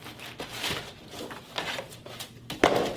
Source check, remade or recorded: recorded